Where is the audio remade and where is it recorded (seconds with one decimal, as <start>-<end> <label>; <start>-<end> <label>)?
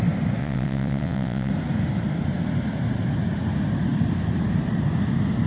0.0-0.4 recorded; 0.4-1.5 remade; 1.5-5.5 recorded